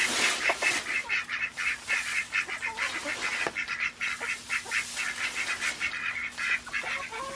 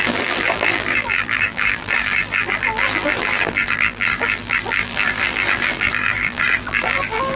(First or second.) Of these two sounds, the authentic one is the first